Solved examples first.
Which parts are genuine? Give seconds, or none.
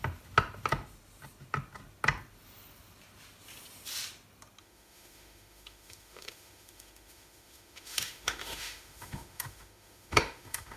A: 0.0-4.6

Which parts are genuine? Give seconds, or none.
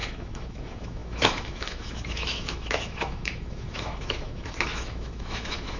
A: none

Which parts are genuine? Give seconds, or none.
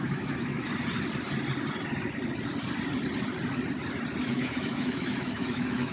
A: 0.7-4.2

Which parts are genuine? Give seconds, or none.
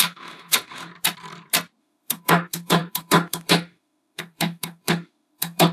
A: 0.9-1.8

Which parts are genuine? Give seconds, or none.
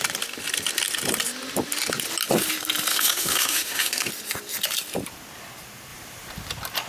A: 0.0-2.9; 4.1-6.9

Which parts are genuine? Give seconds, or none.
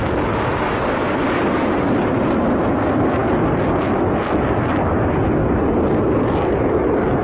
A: 0.0-7.2